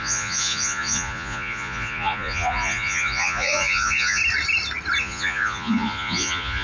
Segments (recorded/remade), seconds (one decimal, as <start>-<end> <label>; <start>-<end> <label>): 0.0-4.2 remade; 4.2-5.0 recorded; 5.0-6.6 remade